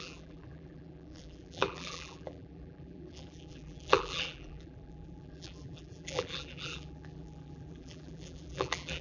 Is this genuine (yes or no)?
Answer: no